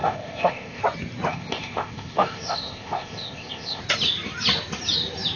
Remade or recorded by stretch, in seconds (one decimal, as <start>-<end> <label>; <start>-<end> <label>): 0.0-0.8 remade; 0.8-1.3 recorded; 1.3-3.8 remade; 3.8-5.4 recorded

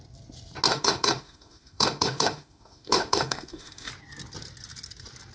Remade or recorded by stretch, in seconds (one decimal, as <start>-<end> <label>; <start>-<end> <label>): 0.0-0.7 recorded; 0.7-3.9 remade; 3.9-5.3 recorded

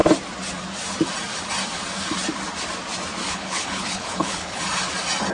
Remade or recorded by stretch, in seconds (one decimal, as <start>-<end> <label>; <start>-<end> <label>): 0.0-3.2 recorded; 3.2-4.6 remade; 4.6-5.3 recorded

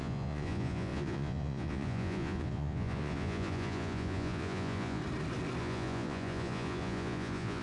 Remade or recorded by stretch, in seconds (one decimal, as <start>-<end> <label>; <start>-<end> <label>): 0.0-5.0 remade; 5.0-5.6 recorded; 5.6-7.6 remade

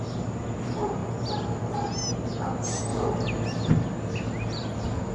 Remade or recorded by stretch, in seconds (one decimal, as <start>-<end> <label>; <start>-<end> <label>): 0.0-5.1 recorded

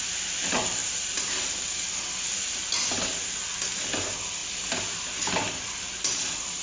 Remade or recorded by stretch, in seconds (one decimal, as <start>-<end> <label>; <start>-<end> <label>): 0.0-6.6 recorded